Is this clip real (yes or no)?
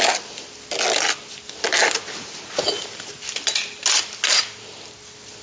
yes